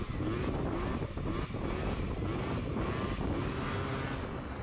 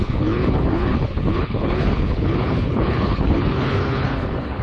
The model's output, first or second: second